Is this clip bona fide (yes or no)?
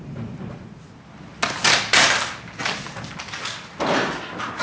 yes